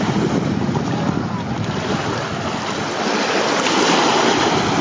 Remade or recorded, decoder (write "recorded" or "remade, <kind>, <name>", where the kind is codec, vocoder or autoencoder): recorded